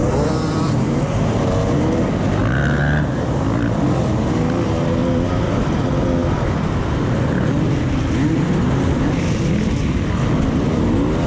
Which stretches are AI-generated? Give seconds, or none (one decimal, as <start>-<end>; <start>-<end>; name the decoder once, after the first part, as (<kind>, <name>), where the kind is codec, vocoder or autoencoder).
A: 0.0-1.4 (vocoder, BigVGAN v2); 2.4-4.0; 5.0-5.8; 6.2-6.8